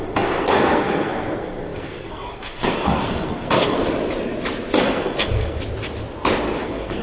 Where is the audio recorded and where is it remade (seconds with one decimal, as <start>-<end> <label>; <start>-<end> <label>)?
0.0-3.8 remade; 3.8-4.8 recorded; 4.8-5.6 remade; 5.6-6.6 recorded; 6.6-7.0 remade